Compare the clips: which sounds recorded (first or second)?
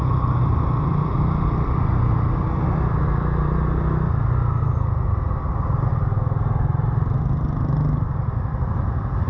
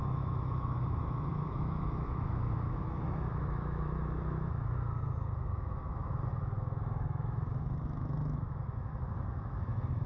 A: first